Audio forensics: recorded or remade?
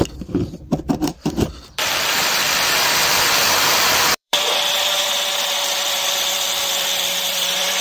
remade